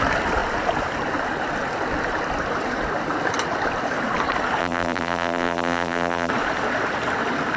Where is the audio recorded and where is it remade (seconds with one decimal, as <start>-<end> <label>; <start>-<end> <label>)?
0.0-4.6 recorded; 4.6-6.3 remade; 6.3-7.6 recorded